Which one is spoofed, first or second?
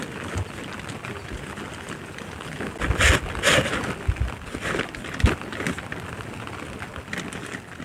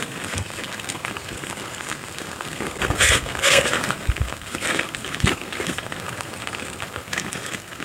second